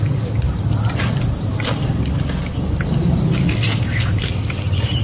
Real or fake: real